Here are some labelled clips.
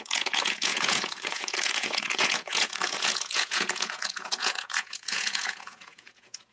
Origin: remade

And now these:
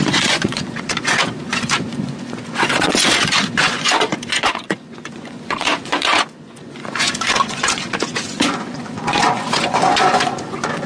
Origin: remade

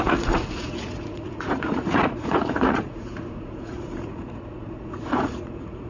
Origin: remade